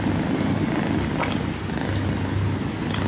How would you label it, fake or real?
real